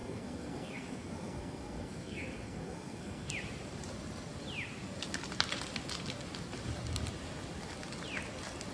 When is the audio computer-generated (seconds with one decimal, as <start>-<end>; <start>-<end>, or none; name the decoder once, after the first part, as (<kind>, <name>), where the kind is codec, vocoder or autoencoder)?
0.0-3.3 (codec, SNAC)